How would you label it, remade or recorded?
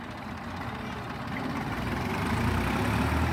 recorded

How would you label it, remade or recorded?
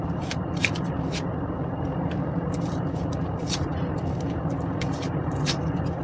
remade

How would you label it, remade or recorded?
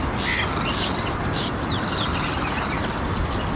recorded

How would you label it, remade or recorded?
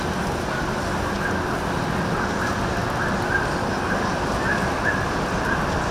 recorded